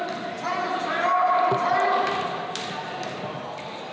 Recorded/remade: recorded